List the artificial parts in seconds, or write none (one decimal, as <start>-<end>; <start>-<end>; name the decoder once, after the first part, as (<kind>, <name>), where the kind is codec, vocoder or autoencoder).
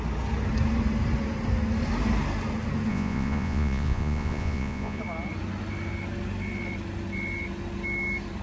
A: 2.9-5.0 (vocoder, Vocos)